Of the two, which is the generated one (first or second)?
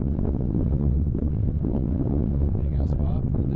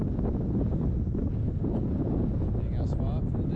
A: first